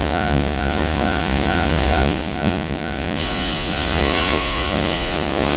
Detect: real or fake fake